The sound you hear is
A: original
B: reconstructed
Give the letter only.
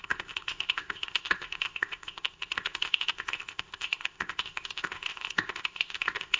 B